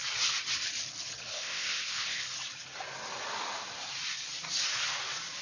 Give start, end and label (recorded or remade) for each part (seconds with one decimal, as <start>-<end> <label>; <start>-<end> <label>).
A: 0.0-1.3 recorded; 1.3-2.2 remade; 2.2-5.4 recorded